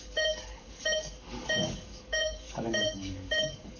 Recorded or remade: remade